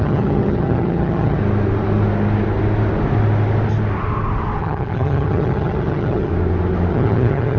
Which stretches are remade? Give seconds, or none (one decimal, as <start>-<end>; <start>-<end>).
0.0-1.4; 4.6-6.3; 6.9-7.6

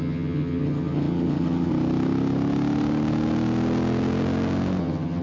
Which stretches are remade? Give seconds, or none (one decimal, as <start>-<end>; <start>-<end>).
0.0-1.7; 4.8-5.2

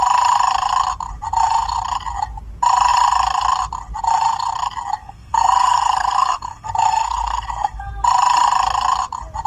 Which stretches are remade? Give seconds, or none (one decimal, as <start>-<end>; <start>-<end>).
5.0-7.9

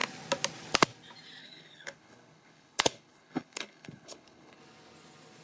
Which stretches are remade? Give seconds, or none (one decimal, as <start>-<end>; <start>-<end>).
1.4-4.6

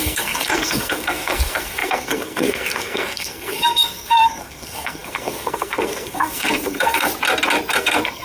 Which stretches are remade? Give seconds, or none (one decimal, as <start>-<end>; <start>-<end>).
0.0-7.1; 7.7-8.2

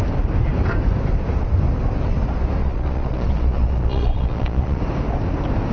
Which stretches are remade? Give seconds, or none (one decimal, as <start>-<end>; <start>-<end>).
2.6-4.8